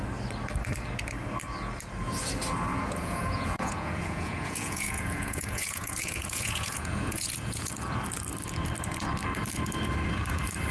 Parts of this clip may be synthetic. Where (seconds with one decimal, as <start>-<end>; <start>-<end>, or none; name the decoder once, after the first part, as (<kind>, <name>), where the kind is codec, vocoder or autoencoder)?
2.7-7.7 (vocoder, Vocos)